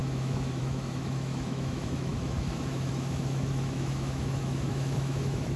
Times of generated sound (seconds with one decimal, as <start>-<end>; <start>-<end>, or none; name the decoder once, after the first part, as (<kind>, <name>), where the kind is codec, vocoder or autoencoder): 0.0-5.6 (autoencoder, DAC-VAE)